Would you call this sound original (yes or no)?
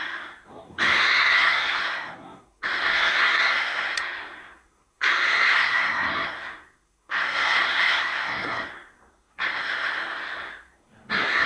no